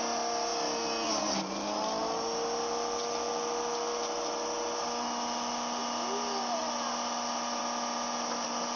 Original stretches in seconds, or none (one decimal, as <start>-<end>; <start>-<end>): 0.0-8.8